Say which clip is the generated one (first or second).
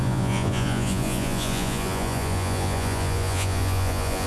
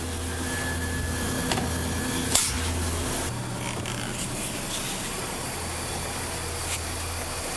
first